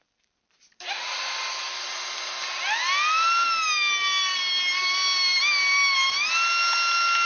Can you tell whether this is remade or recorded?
recorded